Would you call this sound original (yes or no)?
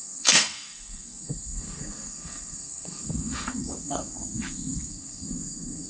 no